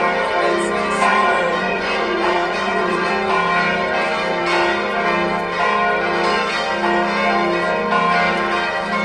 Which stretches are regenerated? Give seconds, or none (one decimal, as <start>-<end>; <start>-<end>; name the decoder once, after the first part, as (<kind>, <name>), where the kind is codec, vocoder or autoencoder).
1.1-3.1 (vocoder, Vocos)